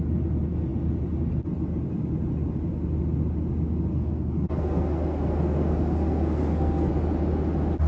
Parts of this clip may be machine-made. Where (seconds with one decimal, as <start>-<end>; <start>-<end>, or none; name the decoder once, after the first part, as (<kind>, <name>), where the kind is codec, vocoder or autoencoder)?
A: 3.9-6.9 (codec, SNAC)